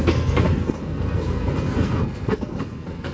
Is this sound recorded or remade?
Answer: remade